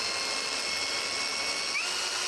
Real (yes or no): yes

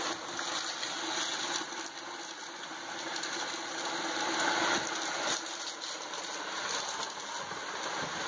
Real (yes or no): yes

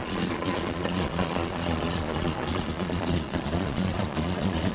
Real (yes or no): no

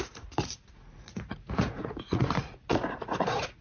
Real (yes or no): no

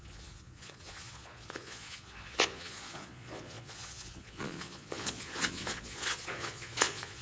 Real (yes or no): no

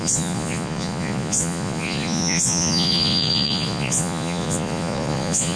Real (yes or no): no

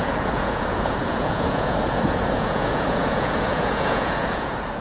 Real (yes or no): no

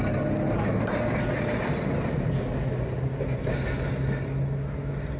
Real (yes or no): yes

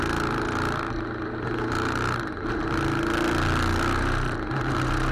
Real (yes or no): yes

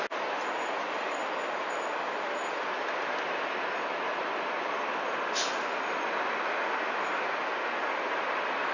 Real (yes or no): yes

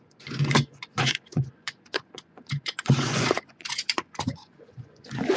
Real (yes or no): no